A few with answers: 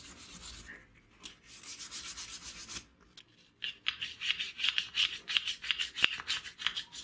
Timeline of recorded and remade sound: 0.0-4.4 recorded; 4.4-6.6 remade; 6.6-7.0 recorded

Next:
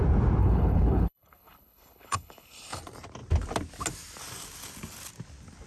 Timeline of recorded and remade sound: 0.0-0.4 recorded; 0.4-2.8 remade; 2.8-5.7 recorded

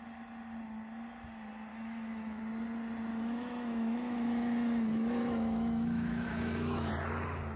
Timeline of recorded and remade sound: 0.0-1.7 recorded; 1.7-2.4 remade; 2.4-3.1 recorded; 3.1-6.9 remade; 6.9-7.6 recorded